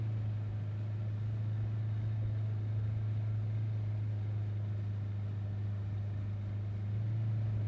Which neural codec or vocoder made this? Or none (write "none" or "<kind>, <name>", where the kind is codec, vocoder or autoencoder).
none